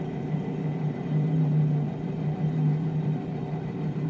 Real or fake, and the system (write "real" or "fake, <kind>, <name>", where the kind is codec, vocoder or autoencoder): fake, vocoder, BigVGAN v2